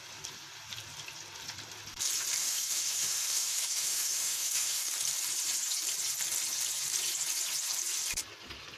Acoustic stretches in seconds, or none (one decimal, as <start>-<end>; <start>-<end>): 0.0-2.4; 4.9-8.8

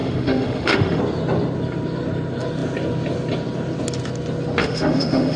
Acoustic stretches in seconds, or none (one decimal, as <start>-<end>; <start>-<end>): 1.0-4.6

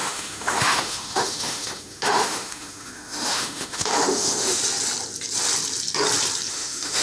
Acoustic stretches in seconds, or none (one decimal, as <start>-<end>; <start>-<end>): 4.6-6.5

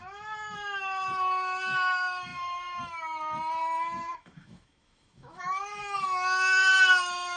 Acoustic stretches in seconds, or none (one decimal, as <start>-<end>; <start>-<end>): none

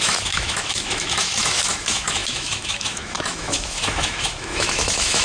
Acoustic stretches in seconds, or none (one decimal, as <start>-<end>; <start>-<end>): none

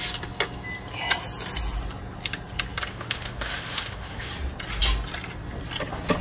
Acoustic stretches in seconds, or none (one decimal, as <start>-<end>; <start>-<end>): 0.0-2.9; 4.3-6.2

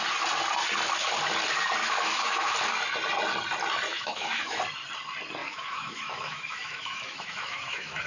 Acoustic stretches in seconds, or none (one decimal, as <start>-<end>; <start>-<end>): 0.0-1.8; 2.5-3.9; 4.6-5.4

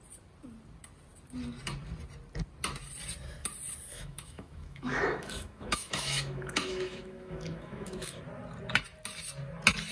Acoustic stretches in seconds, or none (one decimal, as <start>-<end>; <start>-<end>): 0.0-3.9; 8.2-9.9